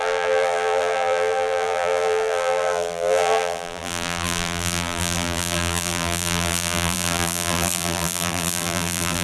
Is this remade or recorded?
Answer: remade